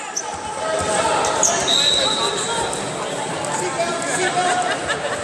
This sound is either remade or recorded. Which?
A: recorded